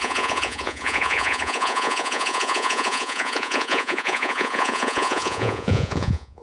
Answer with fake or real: fake